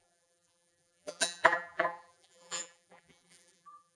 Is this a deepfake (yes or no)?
yes